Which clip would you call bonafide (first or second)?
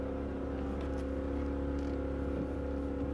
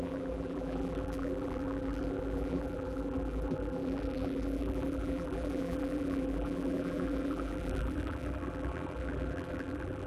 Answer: first